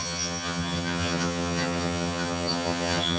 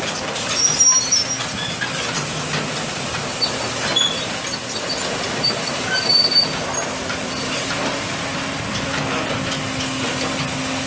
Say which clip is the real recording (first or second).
second